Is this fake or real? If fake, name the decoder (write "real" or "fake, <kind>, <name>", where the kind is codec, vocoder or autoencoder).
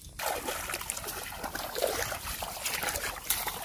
real